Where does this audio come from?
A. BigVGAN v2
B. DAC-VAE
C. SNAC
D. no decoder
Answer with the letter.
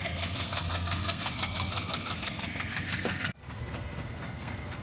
C